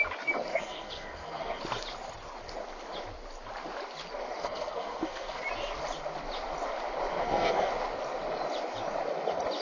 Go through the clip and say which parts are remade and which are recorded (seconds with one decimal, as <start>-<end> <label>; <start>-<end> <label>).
0.0-0.5 recorded; 0.5-1.6 remade; 1.6-4.4 recorded; 4.4-5.4 remade; 5.4-7.1 recorded; 7.1-7.7 remade; 7.7-9.6 recorded

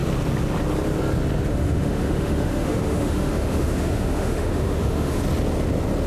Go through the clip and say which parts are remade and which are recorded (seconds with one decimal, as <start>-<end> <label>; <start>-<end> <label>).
0.0-1.5 recorded; 1.5-5.2 remade; 5.2-6.1 recorded

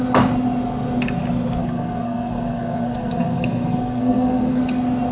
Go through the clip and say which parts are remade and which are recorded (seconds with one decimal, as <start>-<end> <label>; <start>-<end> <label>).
0.0-1.6 recorded; 1.6-4.6 remade; 4.6-5.1 recorded

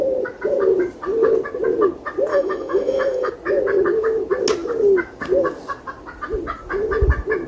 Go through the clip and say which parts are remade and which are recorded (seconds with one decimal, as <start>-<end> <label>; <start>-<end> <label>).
0.0-2.3 recorded; 2.3-3.3 remade; 3.3-7.5 recorded

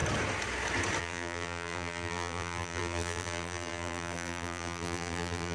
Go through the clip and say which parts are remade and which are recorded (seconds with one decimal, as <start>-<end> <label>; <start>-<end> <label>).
0.0-1.0 recorded; 1.0-5.5 remade

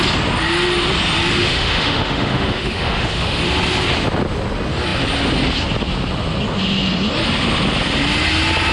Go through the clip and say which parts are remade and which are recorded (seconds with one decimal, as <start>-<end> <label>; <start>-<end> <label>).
0.0-1.3 recorded; 1.3-3.4 remade; 3.4-8.7 recorded

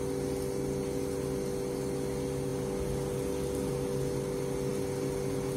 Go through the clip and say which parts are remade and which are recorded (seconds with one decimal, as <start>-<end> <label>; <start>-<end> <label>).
0.0-5.6 recorded